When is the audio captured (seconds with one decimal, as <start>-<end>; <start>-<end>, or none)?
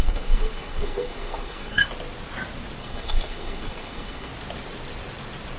1.8-2.8; 4.3-5.6